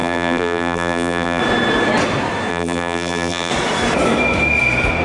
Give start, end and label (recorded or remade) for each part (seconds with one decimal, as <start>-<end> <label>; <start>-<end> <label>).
0.0-1.4 remade; 1.4-2.5 recorded; 2.5-3.5 remade; 3.5-5.0 recorded